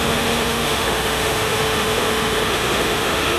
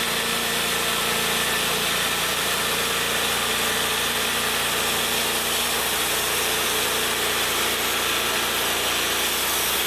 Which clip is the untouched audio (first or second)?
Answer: second